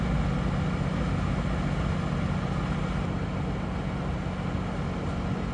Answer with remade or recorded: recorded